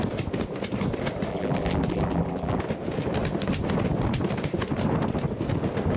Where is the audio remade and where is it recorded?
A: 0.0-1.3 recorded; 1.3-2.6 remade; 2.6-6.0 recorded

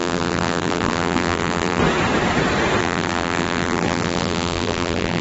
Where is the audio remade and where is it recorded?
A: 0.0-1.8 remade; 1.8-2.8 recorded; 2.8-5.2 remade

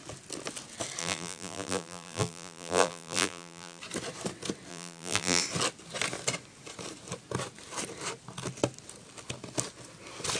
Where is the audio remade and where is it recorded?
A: 0.0-1.0 recorded; 1.0-3.8 remade; 3.8-4.7 recorded; 4.7-5.4 remade; 5.4-10.4 recorded

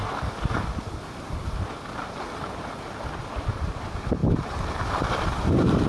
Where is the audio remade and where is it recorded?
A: 0.0-5.9 recorded

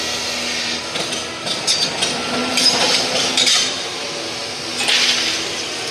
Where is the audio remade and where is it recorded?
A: 0.0-2.4 recorded; 2.4-4.1 remade; 4.1-5.9 recorded

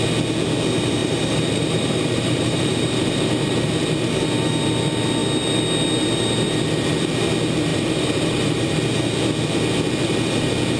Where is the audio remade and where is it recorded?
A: 0.0-1.0 recorded; 1.0-3.7 remade; 3.7-7.7 recorded; 7.7-8.8 remade; 8.8-10.8 recorded